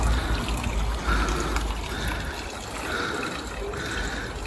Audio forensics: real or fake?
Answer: real